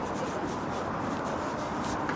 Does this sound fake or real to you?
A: real